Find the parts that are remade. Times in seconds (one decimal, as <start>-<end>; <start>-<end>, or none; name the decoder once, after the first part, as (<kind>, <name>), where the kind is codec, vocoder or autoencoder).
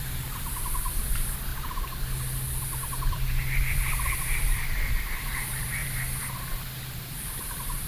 0.0-1.5 (vocoder, BigVGAN v2); 2.6-7.9